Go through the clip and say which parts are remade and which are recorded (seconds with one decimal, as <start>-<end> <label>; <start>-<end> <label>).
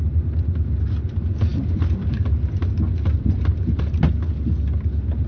0.0-1.5 recorded; 1.5-3.9 remade; 3.9-5.3 recorded